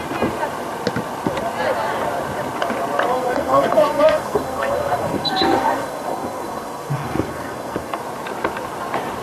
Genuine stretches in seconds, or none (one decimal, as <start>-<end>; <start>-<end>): 0.0-3.1; 8.0-9.2